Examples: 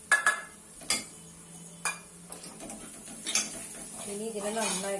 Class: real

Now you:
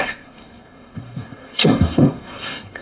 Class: fake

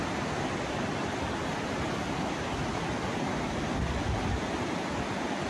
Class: real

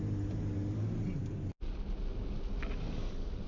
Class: real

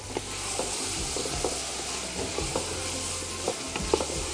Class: real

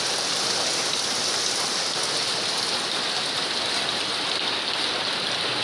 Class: real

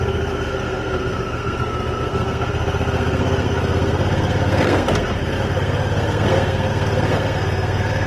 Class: fake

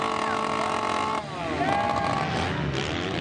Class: real